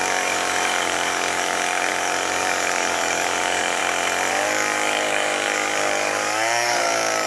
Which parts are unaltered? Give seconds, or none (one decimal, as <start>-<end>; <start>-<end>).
3.8-4.3